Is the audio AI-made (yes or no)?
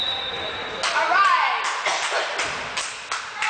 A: no